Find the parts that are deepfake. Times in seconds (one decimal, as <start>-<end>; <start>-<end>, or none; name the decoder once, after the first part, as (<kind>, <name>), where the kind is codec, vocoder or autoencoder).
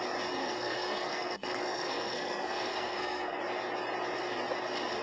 0.4-3.4 (codec, SNAC)